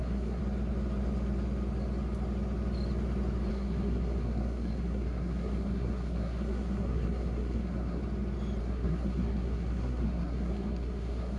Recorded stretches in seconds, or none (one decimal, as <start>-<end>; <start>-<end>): 0.4-3.5; 8.0-8.6